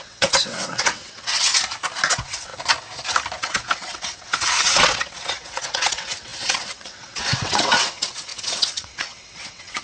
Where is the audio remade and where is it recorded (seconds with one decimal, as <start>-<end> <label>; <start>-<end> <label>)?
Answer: 0.0-1.5 remade; 1.5-2.1 recorded; 2.1-2.5 remade; 2.5-3.4 recorded; 3.4-9.8 remade